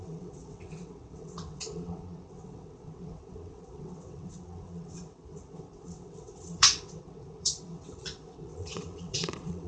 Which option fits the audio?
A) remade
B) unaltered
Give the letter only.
A